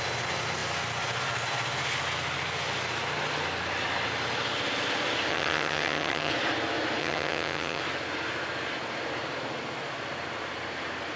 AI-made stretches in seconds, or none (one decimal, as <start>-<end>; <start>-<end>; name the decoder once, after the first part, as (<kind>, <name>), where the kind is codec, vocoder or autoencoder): 5.3-6.3 (vocoder, HiFi-GAN); 7.0-7.8